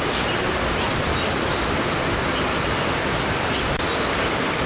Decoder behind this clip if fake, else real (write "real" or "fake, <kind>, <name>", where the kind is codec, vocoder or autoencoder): real